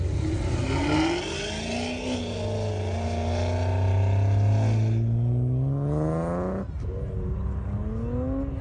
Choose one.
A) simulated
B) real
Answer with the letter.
B